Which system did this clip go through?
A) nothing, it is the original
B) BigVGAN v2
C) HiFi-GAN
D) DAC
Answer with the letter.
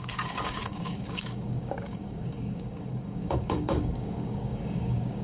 D